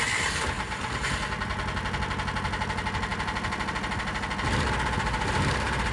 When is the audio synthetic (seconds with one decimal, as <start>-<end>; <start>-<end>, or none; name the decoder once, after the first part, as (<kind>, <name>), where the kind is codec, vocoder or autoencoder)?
none